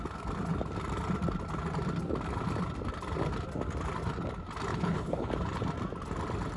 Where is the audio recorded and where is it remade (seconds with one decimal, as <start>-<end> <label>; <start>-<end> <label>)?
0.0-4.7 recorded; 4.7-5.3 remade; 5.3-6.6 recorded

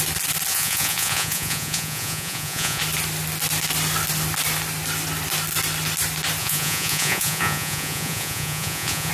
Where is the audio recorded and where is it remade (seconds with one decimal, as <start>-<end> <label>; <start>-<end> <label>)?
0.0-0.5 recorded; 0.5-2.8 remade; 2.8-6.4 recorded; 6.4-9.1 remade